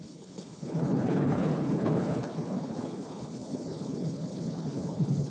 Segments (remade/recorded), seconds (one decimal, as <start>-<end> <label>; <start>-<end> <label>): 0.0-5.3 remade